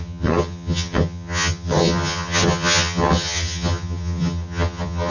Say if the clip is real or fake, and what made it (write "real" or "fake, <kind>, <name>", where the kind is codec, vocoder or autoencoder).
fake, vocoder, HiFi-GAN